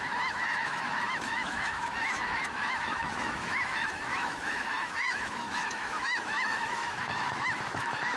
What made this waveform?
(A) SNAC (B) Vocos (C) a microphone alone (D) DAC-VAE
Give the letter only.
D